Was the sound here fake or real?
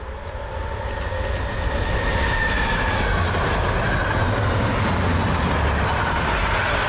real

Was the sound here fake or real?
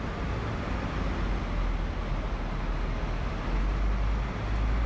real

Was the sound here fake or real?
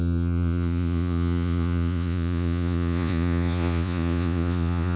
fake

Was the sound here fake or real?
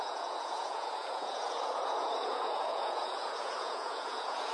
fake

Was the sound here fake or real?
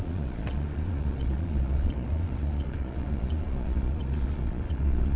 fake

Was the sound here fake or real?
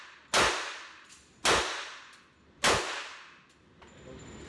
real